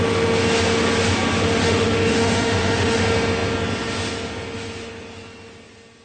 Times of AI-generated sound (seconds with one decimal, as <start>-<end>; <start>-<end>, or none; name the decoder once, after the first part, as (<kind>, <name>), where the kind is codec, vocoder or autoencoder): 1.6-3.0 (autoencoder, DAC-VAE)